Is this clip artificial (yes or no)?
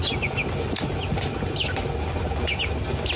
no